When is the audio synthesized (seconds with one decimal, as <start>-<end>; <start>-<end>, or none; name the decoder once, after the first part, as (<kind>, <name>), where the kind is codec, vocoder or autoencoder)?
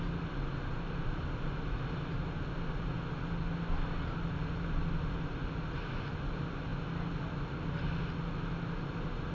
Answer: none